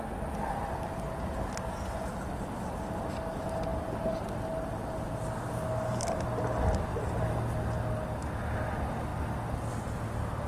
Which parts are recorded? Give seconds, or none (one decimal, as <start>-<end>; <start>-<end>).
0.0-10.5